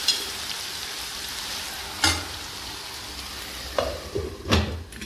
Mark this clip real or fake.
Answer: fake